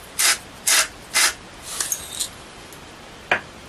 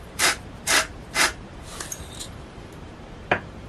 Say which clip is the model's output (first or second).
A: second